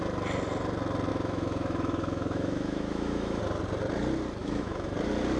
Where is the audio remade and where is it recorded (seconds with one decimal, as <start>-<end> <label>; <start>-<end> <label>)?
0.0-1.1 recorded; 1.1-3.4 remade; 3.4-4.4 recorded; 4.4-4.9 remade; 4.9-5.4 recorded